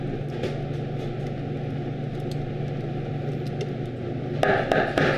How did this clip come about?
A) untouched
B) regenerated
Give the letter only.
A